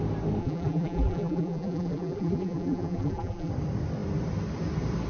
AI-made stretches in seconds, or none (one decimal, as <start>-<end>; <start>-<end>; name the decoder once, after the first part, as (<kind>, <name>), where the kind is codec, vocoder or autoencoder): 0.4-3.5 (vocoder, BigVGAN v2)